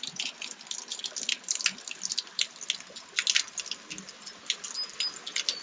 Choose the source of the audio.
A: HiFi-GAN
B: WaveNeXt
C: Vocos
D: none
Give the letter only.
D